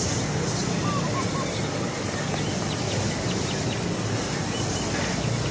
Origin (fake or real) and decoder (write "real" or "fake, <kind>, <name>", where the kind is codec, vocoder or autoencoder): real